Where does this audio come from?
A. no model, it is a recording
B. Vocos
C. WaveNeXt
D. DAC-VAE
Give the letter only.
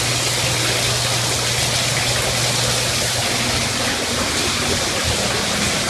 A